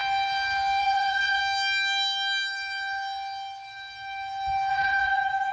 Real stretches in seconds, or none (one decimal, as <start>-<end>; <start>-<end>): 0.0-0.8; 1.4-4.7